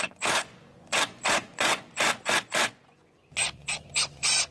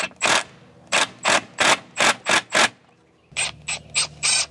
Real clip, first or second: second